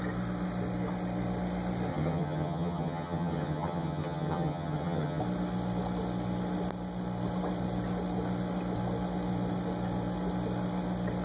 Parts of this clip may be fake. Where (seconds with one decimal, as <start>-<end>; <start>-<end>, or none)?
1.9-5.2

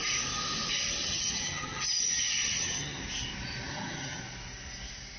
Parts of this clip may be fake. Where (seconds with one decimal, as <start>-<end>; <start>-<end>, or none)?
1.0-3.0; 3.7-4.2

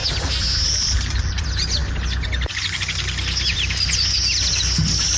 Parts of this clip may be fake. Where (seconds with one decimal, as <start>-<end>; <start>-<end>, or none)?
none